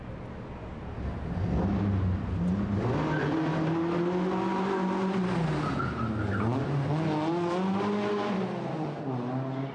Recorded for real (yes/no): yes